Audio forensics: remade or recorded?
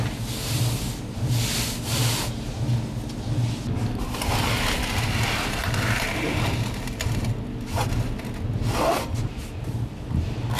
recorded